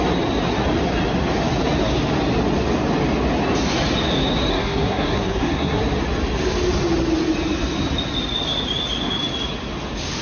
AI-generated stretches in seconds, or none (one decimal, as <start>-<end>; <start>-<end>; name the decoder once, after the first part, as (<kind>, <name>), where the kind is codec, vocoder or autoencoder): 4.5-5.8 (codec, SNAC)